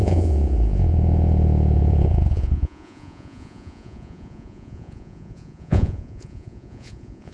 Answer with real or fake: fake